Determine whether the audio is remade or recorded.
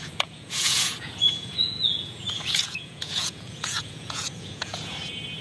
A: remade